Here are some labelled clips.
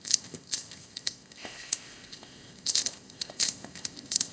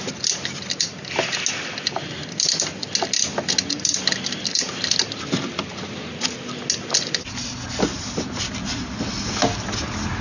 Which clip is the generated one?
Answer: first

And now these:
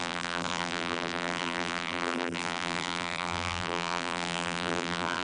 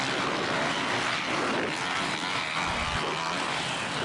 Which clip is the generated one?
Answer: first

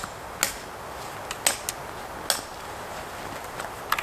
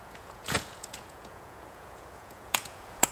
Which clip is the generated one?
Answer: second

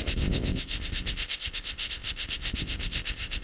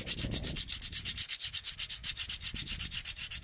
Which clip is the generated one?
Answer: first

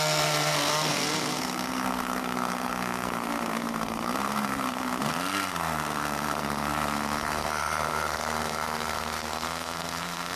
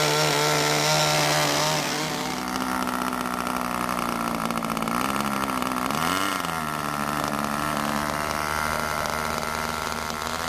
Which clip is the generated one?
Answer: first